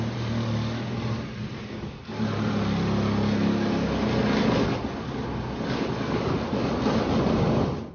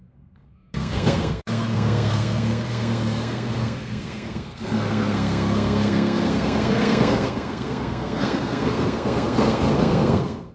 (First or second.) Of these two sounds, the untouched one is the first